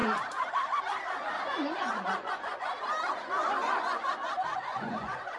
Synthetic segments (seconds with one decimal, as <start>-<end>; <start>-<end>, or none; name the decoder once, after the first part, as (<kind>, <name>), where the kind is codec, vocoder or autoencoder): 1.9-2.7 (vocoder, Vocos); 3.4-4.1; 4.5-5.4